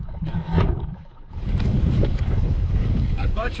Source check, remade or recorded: remade